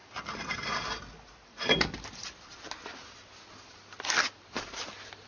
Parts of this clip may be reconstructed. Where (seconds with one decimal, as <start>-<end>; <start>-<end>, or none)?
none